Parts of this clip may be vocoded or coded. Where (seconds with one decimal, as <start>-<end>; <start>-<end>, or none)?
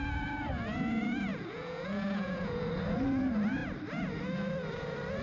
1.3-2.7